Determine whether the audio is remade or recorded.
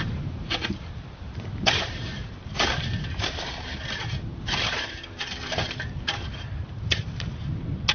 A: remade